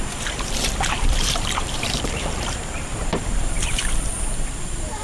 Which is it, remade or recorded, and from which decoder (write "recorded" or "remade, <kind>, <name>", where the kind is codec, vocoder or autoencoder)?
remade, vocoder, BigVGAN v2